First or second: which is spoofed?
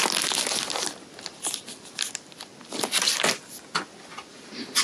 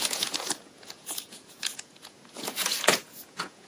second